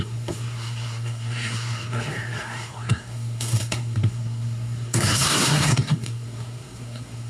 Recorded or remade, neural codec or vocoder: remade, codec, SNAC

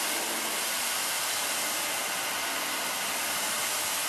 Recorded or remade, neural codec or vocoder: recorded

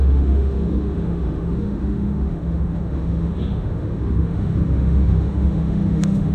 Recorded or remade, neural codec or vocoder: remade, autoencoder, DAC-VAE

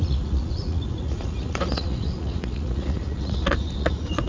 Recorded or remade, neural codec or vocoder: remade, vocoder, Vocos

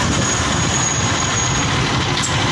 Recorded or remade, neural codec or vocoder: recorded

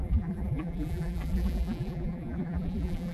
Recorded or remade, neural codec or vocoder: remade, vocoder, BigVGAN v2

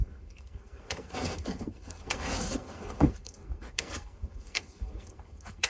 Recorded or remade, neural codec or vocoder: remade, codec, SNAC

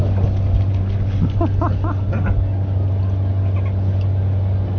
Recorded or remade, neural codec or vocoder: recorded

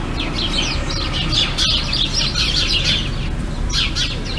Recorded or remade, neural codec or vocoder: recorded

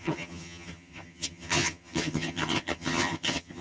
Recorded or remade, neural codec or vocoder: remade, vocoder, HiFi-GAN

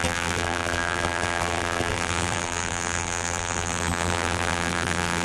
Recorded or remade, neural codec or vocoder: remade, vocoder, BigVGAN v2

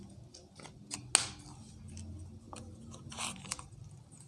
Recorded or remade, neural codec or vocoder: recorded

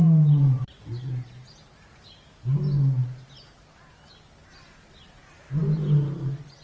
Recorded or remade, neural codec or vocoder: recorded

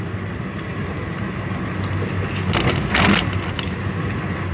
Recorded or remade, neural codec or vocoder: recorded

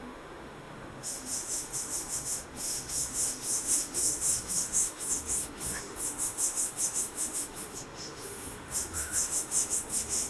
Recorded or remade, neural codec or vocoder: remade, autoencoder, DAC-VAE